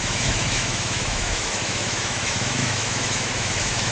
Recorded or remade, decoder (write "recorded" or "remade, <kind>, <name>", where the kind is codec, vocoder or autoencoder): remade, autoencoder, DAC-VAE